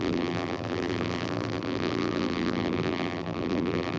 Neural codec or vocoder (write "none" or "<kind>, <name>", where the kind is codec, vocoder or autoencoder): vocoder, BigVGAN v2